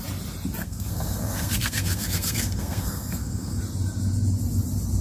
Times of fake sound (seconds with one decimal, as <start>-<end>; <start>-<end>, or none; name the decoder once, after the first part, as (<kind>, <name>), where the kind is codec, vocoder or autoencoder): 0.6-3.6 (codec, SNAC)